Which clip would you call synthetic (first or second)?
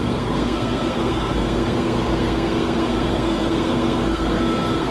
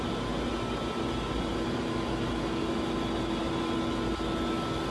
first